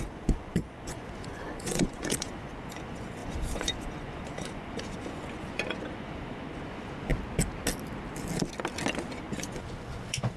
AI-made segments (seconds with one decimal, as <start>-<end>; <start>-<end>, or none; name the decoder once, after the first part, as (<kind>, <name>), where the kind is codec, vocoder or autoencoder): 0.0-7.1 (vocoder, Vocos); 9.1-10.4